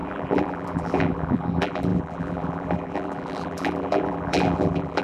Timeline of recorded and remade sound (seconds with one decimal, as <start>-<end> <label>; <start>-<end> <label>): 0.0-5.0 remade